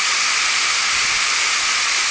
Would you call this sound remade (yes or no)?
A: no